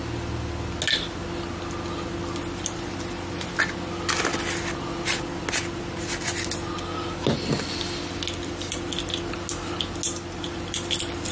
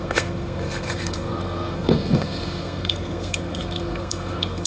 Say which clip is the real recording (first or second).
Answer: first